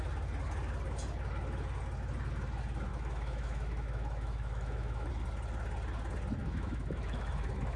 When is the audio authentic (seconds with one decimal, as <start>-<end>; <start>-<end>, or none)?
0.0-2.9; 5.1-6.4